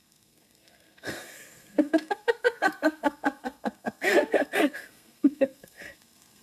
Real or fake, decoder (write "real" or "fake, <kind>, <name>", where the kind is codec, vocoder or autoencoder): fake, codec, SNAC